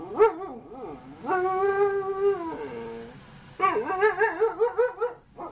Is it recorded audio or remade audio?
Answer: recorded